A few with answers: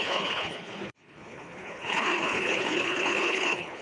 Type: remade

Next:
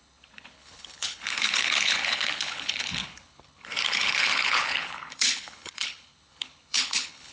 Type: remade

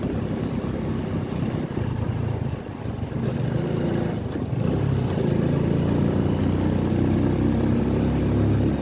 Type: recorded